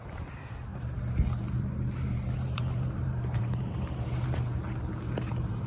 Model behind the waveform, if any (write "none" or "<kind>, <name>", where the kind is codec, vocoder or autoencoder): vocoder, BigVGAN v2